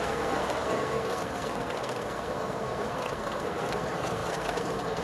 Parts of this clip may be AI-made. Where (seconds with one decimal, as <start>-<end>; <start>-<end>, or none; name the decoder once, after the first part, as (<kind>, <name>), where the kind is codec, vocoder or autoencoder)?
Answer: 0.0-5.0 (codec, SNAC)